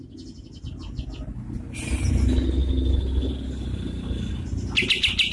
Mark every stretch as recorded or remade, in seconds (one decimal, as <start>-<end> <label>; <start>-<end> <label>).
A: 0.0-5.3 recorded

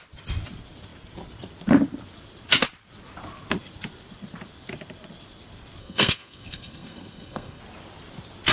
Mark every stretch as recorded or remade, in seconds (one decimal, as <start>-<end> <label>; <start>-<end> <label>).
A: 0.0-5.8 recorded; 5.8-7.6 remade; 7.6-8.5 recorded